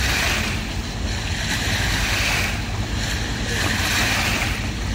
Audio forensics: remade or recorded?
recorded